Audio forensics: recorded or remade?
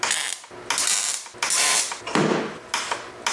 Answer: recorded